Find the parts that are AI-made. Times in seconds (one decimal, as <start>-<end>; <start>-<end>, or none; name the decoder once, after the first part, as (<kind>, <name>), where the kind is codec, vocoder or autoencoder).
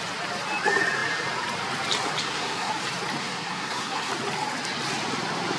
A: 2.2-2.7 (codec, SNAC); 3.2-4.1